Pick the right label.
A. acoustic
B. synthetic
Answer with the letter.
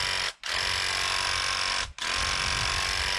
A